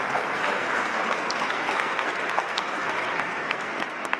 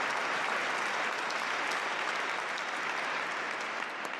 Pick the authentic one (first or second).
second